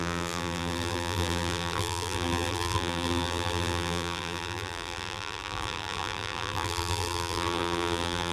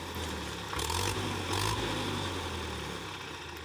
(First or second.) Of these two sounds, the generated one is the first